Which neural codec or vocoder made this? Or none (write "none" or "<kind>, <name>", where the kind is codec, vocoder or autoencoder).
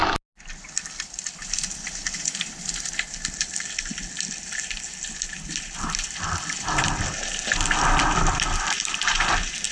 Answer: none